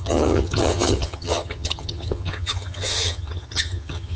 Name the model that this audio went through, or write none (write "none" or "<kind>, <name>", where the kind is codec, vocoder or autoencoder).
vocoder, HiFi-GAN